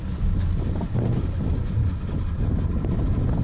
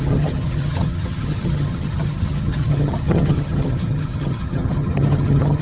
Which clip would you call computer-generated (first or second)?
second